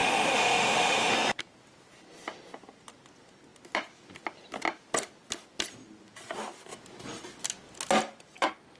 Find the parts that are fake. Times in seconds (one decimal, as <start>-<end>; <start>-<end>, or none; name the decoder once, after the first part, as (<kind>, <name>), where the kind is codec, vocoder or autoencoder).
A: 0.0-1.1 (autoencoder, DAC-VAE)